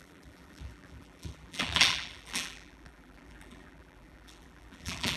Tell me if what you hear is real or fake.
fake